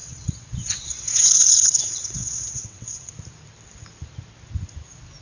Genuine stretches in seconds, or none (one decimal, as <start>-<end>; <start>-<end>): 3.1-5.2

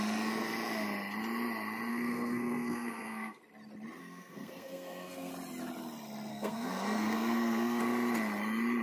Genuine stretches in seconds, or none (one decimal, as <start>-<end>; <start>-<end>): 0.0-1.9; 3.4-4.0; 5.3-6.3; 7.8-8.8

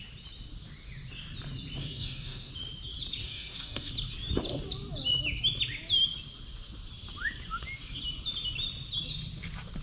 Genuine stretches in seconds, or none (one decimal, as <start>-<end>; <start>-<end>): 0.0-1.8; 2.5-3.2; 3.9-9.8

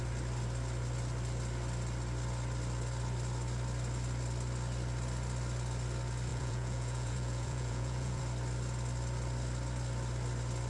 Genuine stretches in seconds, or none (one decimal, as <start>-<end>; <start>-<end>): 0.0-6.3; 8.2-10.7

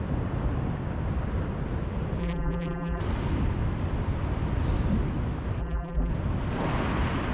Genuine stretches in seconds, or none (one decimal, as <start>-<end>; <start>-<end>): 0.0-2.2; 3.0-5.6; 6.1-7.3